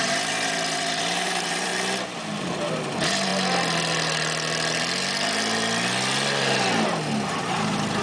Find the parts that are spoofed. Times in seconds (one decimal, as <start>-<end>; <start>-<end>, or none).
0.0-1.7; 2.4-3.3; 7.4-8.0